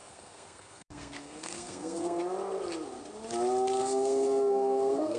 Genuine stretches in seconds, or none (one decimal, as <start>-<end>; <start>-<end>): 2.2-3.8